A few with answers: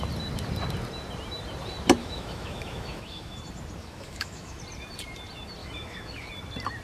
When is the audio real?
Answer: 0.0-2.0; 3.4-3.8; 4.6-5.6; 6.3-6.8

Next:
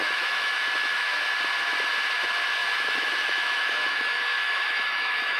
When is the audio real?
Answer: 1.2-2.6

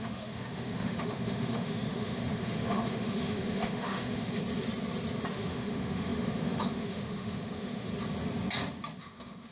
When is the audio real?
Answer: 4.4-5.3; 7.9-9.0

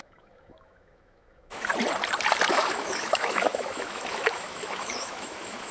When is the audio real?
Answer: 1.7-2.5

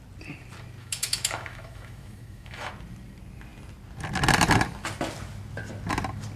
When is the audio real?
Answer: 0.0-0.8; 2.7-6.4

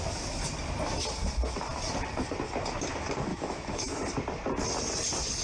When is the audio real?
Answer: 0.0-3.3; 4.0-5.4